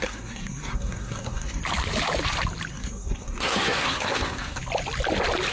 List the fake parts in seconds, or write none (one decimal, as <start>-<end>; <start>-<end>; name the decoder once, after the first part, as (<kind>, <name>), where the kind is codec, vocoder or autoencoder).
0.0-1.6 (codec, SNAC); 2.7-4.6